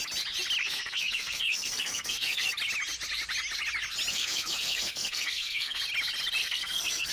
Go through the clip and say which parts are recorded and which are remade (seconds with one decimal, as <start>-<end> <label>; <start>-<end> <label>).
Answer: 0.0-0.6 recorded; 0.6-2.5 remade; 2.5-4.1 recorded; 4.1-5.8 remade; 5.8-6.4 recorded; 6.4-7.1 remade